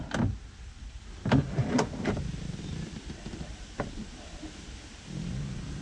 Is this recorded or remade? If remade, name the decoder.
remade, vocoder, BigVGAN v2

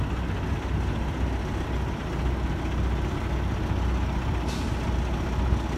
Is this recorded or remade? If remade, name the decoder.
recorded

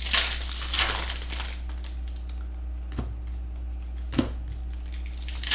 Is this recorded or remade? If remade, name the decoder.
recorded